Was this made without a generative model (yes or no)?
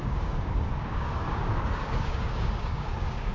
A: no